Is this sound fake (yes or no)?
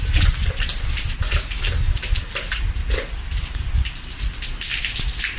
no